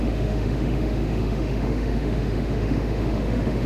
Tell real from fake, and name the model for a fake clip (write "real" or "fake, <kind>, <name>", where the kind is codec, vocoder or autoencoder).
fake, autoencoder, DAC-VAE